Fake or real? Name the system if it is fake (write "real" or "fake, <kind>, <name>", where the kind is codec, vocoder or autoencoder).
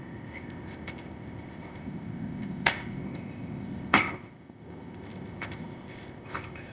fake, codec, ZipCodec